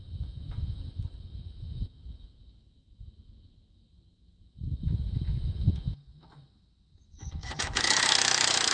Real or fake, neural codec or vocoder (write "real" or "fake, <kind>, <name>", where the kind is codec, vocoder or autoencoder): fake, autoencoder, DAC-VAE